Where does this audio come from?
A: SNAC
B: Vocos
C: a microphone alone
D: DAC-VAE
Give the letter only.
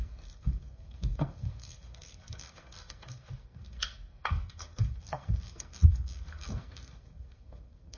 A